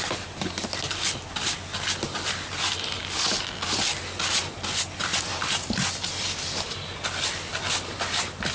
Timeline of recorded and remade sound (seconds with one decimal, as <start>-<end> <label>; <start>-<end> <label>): 0.0-8.5 recorded